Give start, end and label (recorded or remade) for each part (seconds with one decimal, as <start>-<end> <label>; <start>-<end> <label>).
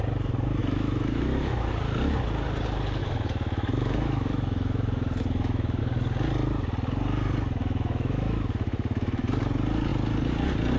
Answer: 0.0-0.6 recorded; 0.6-1.7 remade; 1.7-3.0 recorded; 3.0-5.8 remade; 5.8-7.6 recorded; 7.6-9.2 remade; 9.2-10.8 recorded